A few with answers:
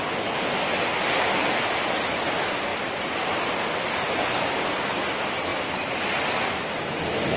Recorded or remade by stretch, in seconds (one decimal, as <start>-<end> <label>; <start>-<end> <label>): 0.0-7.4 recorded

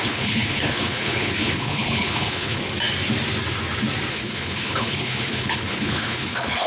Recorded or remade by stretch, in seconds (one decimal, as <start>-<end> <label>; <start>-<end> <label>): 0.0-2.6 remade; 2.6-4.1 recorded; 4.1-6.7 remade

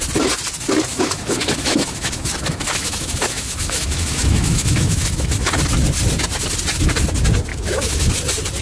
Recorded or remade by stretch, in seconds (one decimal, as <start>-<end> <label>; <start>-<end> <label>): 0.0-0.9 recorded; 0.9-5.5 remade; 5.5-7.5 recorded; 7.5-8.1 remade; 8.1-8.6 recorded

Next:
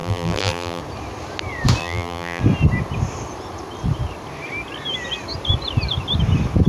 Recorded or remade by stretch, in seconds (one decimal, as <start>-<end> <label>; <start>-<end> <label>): 0.0-0.8 remade; 0.8-1.8 recorded; 1.8-2.4 remade; 2.4-6.7 recorded

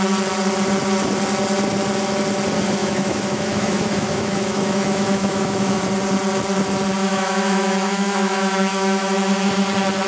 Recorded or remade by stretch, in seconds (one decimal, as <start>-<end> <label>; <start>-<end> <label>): 0.0-2.8 recorded; 2.8-5.8 remade; 5.8-7.0 recorded; 7.0-9.5 remade; 9.5-10.1 recorded

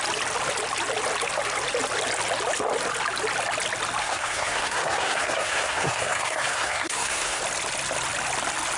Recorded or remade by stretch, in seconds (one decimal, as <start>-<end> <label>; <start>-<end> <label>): 0.0-4.0 recorded; 4.0-7.4 remade; 7.4-8.8 recorded

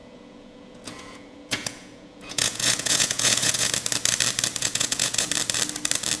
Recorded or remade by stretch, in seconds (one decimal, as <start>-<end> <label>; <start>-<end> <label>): 0.0-3.7 remade; 3.7-4.6 recorded; 4.6-5.3 remade; 5.3-6.2 recorded

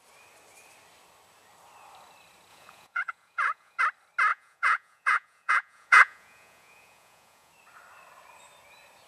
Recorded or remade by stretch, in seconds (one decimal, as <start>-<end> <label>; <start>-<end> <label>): 0.0-2.5 recorded; 2.5-3.8 remade; 3.8-4.3 recorded; 4.3-7.5 remade; 7.5-9.1 recorded